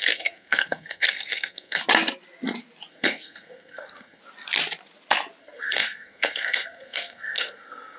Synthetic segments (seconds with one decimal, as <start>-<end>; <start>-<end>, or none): 0.0-1.8; 2.9-4.2; 5.4-8.0